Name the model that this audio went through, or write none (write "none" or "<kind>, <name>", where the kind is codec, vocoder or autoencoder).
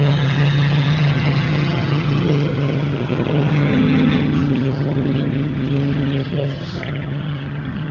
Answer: vocoder, HiFi-GAN